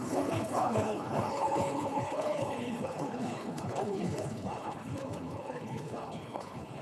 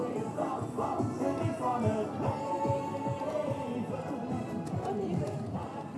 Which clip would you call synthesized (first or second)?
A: first